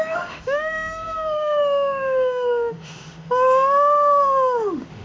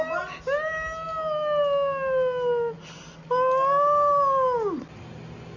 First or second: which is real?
second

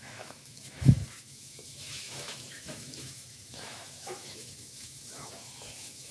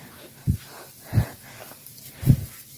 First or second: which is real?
second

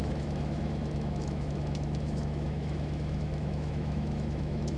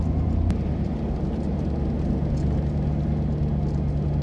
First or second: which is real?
second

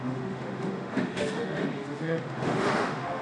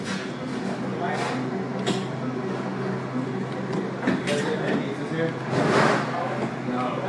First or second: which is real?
second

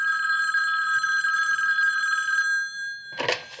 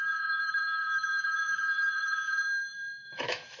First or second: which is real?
first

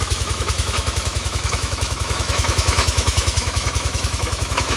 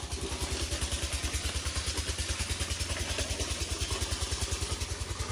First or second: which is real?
second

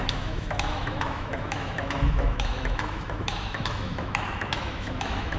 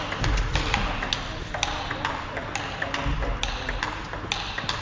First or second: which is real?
second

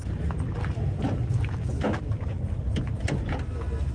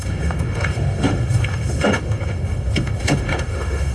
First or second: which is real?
first